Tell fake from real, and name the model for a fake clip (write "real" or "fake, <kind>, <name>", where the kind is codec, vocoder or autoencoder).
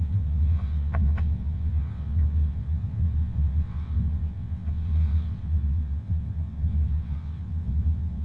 fake, vocoder, WaveNeXt